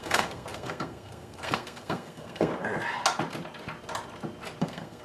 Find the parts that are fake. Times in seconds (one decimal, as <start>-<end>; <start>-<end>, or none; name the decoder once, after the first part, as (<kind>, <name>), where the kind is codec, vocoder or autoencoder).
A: 0.0-2.5 (codec, SNAC); 4.6-5.0